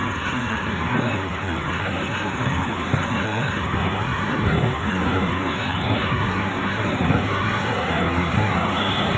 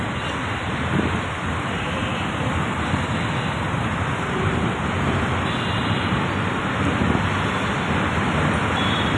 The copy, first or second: first